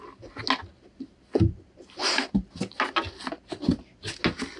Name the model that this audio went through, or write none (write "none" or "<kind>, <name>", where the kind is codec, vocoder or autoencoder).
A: none